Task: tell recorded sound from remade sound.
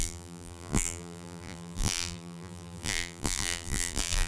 remade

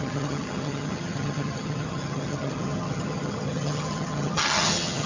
remade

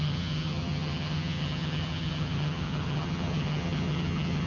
remade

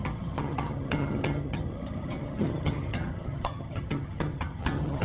remade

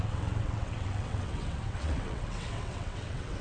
remade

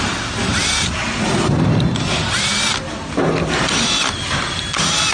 recorded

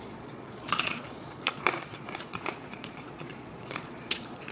remade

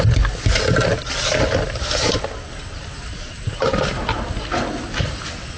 recorded